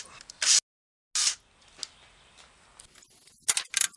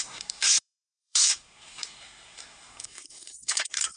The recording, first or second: first